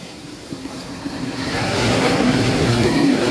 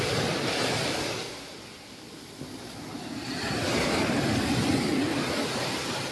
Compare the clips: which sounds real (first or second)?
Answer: second